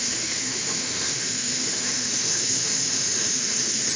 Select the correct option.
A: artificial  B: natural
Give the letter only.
A